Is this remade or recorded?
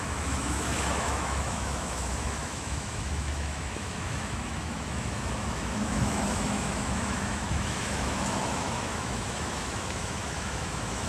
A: remade